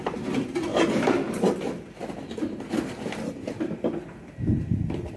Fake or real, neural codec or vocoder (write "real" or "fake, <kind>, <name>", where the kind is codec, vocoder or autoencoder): fake, vocoder, BigVGAN v2